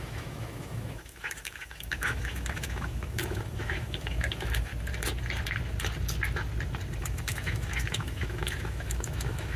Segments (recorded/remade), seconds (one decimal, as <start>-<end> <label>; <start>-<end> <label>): 0.0-4.7 remade; 4.7-7.0 recorded; 7.0-9.6 remade